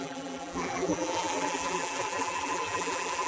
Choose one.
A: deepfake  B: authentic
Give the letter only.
A